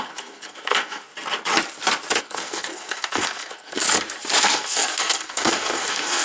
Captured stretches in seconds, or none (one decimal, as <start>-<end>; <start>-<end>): 1.1-2.2; 3.8-4.4